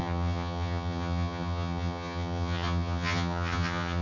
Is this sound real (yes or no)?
no